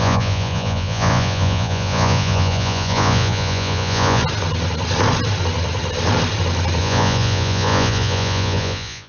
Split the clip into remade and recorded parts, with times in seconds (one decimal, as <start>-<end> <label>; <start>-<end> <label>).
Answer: 0.0-4.2 remade; 4.2-6.8 recorded; 6.8-9.1 remade